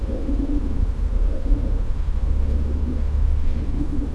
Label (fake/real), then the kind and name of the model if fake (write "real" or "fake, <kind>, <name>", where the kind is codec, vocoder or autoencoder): fake, autoencoder, DAC-VAE